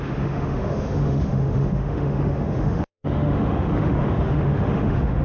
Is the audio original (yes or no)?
no